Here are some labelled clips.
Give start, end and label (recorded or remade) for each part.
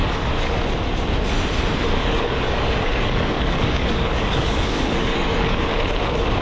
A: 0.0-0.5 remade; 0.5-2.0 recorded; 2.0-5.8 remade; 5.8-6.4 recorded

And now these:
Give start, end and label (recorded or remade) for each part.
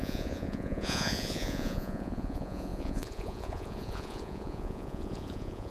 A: 0.0-5.7 remade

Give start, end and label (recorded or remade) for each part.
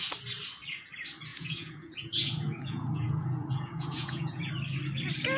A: 0.0-1.3 recorded; 1.3-4.5 remade; 4.5-5.4 recorded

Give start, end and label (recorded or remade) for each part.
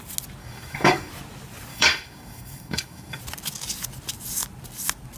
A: 0.0-0.4 recorded; 0.4-1.1 remade; 1.1-1.7 recorded; 1.7-3.2 remade; 3.2-5.2 recorded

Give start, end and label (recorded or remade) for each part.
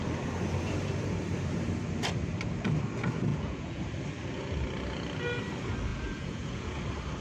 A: 0.0-3.3 recorded; 3.3-3.8 remade; 3.8-5.9 recorded; 5.9-6.8 remade; 6.8-7.2 recorded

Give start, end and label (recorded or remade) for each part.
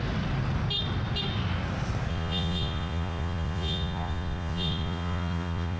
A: 0.0-2.1 recorded; 2.1-5.8 remade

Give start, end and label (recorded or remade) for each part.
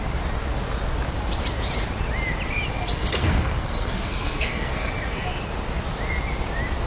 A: 0.0-2.9 recorded; 2.9-4.9 remade; 4.9-6.9 recorded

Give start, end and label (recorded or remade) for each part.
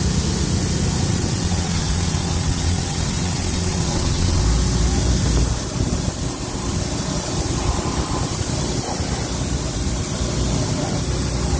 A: 0.0-1.1 recorded; 1.1-4.4 remade; 4.4-11.6 recorded